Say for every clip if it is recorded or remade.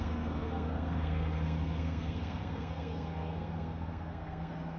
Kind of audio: remade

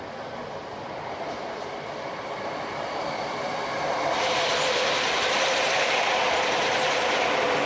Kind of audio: recorded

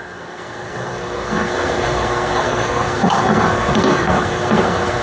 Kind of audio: remade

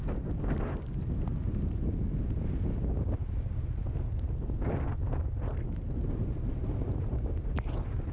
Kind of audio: recorded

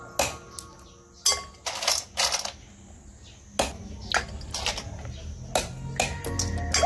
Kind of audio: recorded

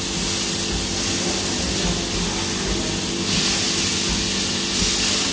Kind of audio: recorded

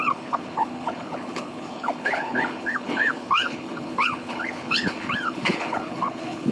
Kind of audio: remade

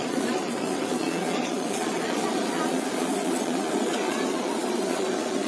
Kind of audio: remade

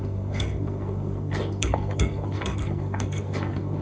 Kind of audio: remade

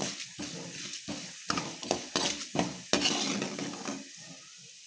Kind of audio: recorded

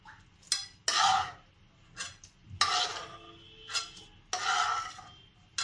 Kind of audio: recorded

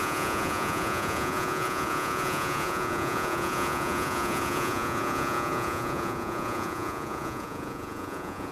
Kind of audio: remade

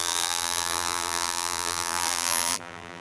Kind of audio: remade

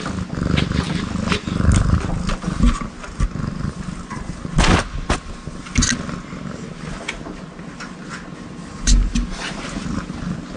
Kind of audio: recorded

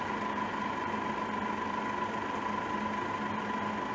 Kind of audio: recorded